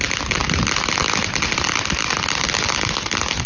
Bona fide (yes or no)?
yes